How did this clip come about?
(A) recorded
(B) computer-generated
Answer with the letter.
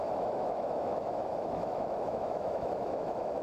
B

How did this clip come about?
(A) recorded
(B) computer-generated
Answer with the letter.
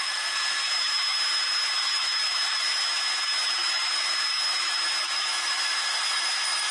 B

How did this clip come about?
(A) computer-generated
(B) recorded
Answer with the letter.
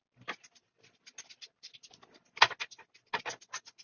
B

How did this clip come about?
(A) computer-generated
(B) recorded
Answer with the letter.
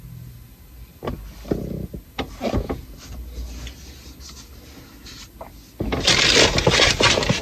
B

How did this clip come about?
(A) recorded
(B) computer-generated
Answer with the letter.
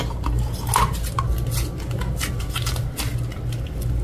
A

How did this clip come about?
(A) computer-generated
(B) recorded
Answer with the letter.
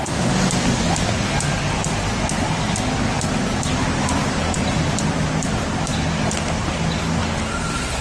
B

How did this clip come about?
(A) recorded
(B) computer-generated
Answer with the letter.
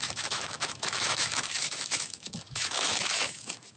B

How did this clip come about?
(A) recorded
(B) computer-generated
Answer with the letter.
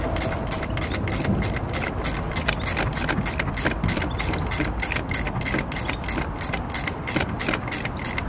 A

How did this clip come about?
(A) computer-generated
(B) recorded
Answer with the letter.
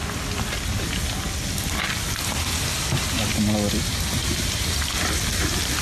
B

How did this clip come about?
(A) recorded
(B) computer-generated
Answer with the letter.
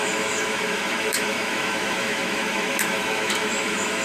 B